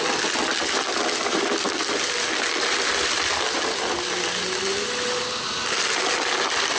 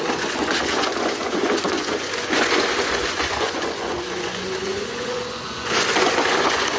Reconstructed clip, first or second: second